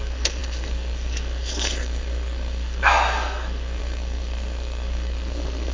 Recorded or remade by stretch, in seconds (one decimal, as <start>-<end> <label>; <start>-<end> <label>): 0.0-5.7 remade